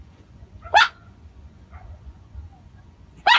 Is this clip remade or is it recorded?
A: remade